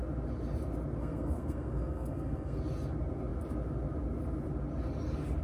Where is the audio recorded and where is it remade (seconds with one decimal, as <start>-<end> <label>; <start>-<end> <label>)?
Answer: 0.0-1.0 recorded; 1.0-2.6 remade; 2.6-5.4 recorded